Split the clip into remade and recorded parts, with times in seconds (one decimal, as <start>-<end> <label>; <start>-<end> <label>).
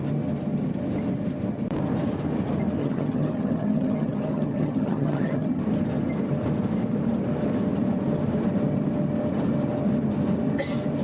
0.0-2.8 recorded; 2.8-5.6 remade; 5.6-11.0 recorded